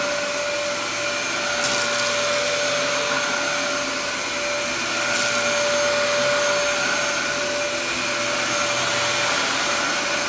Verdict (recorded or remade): recorded